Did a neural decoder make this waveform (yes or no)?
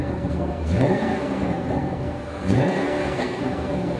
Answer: yes